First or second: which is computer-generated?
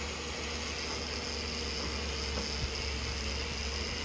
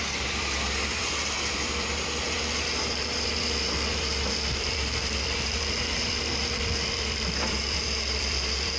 second